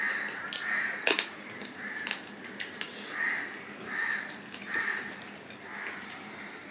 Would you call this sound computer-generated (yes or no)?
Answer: no